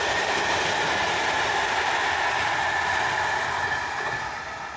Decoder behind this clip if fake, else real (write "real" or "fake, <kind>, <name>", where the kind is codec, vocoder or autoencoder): real